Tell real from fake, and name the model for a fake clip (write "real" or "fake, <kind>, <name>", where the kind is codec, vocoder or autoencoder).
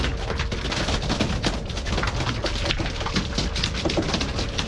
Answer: real